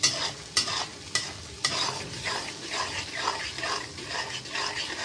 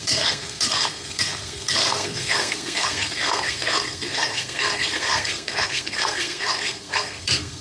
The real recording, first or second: first